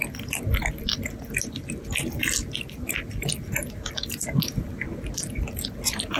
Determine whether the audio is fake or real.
real